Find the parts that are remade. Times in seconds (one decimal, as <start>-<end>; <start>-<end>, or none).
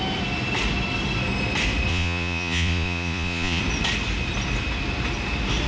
1.9-3.6